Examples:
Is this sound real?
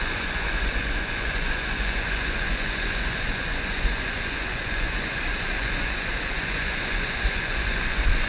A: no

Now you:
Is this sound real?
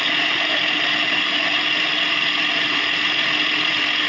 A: yes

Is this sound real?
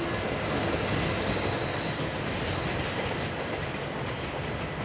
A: yes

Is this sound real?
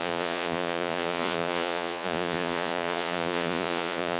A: no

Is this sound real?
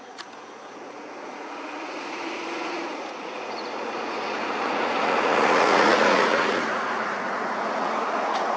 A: no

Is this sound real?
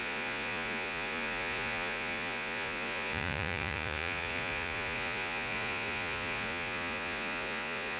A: no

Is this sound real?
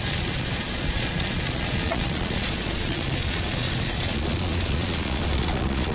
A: no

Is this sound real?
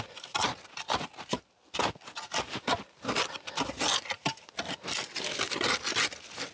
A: yes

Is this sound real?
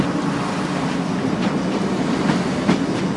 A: yes